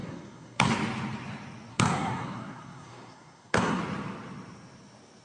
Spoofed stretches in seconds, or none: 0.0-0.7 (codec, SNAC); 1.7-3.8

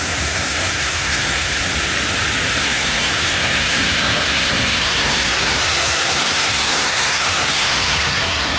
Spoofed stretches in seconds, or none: 0.0-1.6 (codec, SNAC); 2.6-8.6

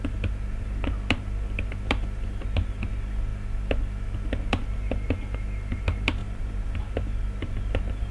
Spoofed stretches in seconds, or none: 6.2-6.8 (vocoder, BigVGAN v2)